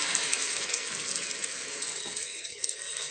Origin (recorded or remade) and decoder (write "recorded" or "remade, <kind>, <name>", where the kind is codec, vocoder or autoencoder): remade, codec, SNAC